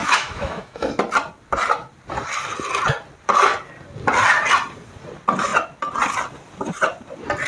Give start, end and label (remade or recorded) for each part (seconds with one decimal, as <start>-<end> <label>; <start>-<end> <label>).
0.0-0.9 remade; 0.9-7.5 recorded